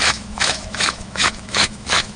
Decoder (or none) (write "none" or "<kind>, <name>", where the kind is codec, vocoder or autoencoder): autoencoder, DAC-VAE